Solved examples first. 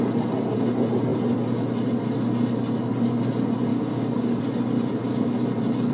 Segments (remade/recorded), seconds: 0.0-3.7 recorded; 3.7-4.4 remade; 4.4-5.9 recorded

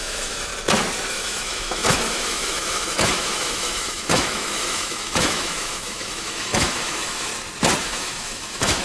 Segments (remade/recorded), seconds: 0.0-0.5 remade; 0.5-1.1 recorded; 1.1-7.3 remade; 7.3-7.8 recorded; 7.8-8.8 remade